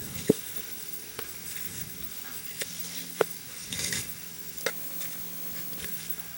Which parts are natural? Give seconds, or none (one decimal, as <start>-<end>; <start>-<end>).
4.6-5.8